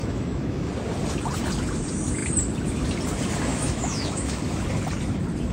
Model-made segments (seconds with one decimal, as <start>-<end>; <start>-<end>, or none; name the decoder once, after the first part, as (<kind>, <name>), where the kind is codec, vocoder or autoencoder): 0.0-0.7 (autoencoder, DAC-VAE); 3.5-4.4